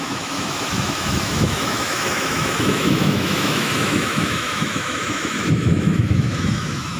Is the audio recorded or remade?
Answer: remade